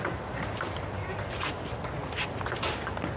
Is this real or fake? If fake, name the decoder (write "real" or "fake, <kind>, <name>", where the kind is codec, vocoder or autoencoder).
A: real